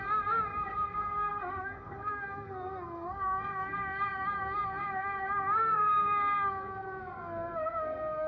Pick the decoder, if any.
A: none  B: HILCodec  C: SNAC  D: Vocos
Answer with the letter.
C